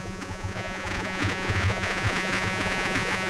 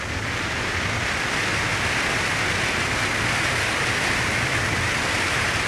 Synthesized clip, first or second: first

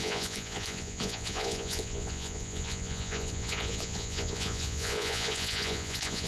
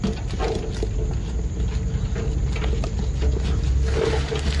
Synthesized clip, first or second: first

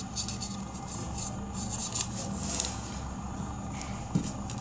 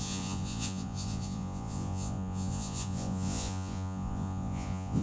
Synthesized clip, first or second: second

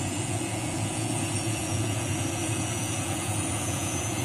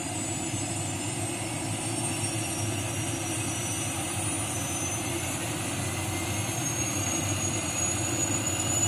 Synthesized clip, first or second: first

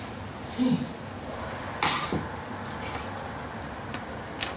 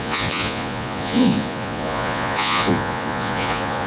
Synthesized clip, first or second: second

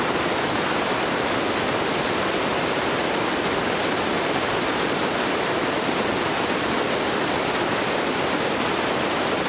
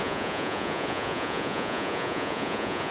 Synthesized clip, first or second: second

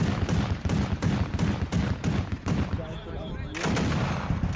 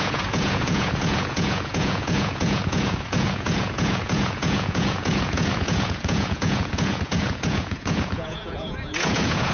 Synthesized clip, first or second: second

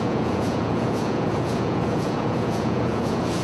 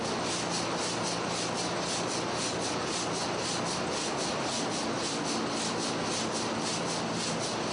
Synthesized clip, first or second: first